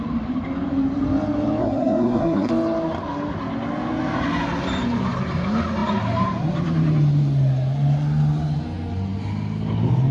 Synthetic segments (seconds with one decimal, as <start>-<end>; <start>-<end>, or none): 1.6-2.5